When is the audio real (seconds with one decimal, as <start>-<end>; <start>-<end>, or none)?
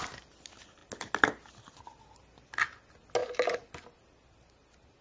0.0-5.0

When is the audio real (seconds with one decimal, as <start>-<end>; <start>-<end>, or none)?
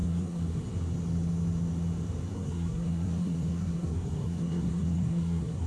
0.6-2.3